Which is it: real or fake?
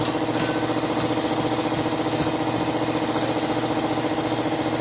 real